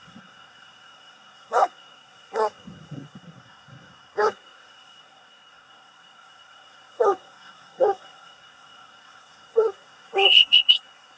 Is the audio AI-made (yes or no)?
yes